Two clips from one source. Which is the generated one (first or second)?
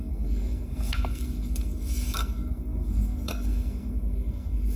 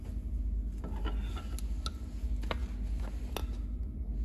first